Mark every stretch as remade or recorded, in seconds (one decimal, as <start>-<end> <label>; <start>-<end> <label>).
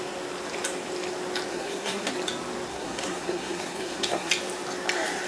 0.0-1.5 recorded; 1.5-2.1 remade; 2.1-2.7 recorded; 2.7-4.3 remade; 4.3-5.3 recorded